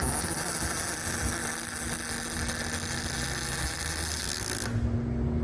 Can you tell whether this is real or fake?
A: real